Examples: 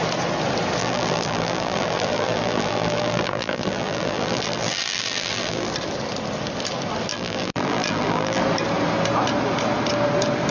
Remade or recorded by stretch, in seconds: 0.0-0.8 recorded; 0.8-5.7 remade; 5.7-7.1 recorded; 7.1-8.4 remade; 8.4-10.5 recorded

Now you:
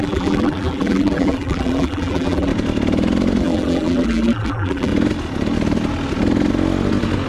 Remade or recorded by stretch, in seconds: 0.0-2.5 remade; 2.5-3.4 recorded; 3.4-4.9 remade; 4.9-7.3 recorded

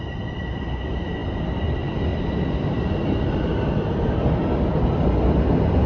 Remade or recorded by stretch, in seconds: 0.0-2.1 recorded; 2.1-5.0 remade; 5.0-5.9 recorded

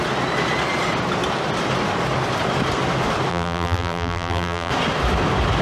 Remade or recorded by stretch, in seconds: 0.0-3.3 recorded; 3.3-4.7 remade; 4.7-5.6 recorded

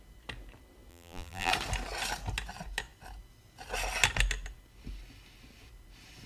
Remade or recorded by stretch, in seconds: 0.0-0.9 recorded; 0.9-1.5 remade; 1.5-6.3 recorded

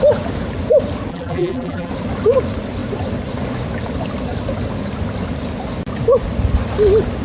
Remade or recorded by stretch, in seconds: 0.0-1.1 recorded; 1.1-1.9 remade; 1.9-7.2 recorded

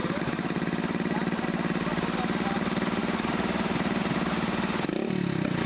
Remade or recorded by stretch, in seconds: 0.0-5.7 recorded